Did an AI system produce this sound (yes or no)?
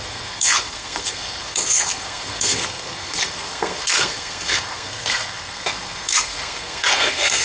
yes